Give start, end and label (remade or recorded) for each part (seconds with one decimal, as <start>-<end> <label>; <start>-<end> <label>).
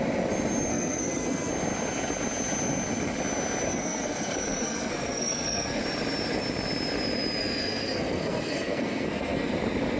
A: 0.0-0.7 recorded; 0.7-1.5 remade; 1.5-3.7 recorded; 3.7-5.8 remade; 5.8-7.4 recorded; 7.4-9.5 remade; 9.5-10.0 recorded